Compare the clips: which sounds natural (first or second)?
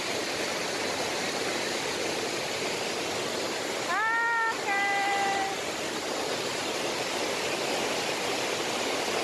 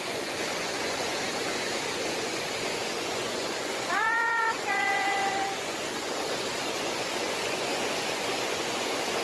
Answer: first